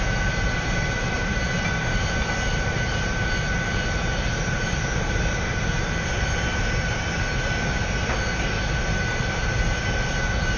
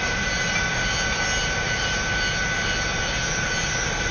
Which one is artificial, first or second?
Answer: first